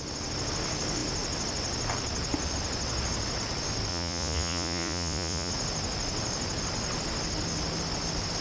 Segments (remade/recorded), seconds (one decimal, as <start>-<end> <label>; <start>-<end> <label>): 0.0-3.9 recorded; 3.9-5.5 remade; 5.5-8.4 recorded